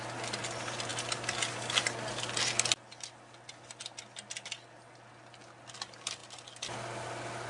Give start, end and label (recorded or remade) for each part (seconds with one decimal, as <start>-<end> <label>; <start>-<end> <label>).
0.0-7.5 recorded